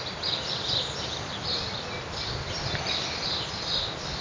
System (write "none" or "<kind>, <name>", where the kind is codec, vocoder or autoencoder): none